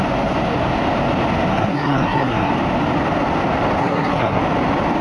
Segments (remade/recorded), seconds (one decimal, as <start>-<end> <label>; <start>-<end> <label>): 0.0-1.5 recorded; 1.5-2.5 remade; 2.5-3.8 recorded; 3.8-4.4 remade; 4.4-5.0 recorded